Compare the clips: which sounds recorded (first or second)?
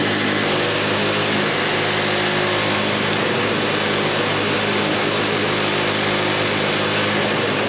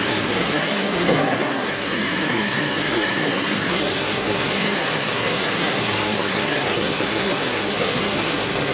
first